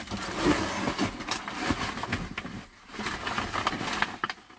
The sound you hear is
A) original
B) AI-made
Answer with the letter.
A